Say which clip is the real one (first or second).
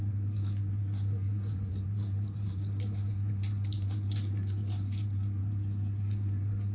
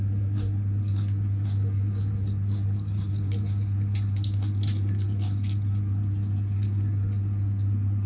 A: second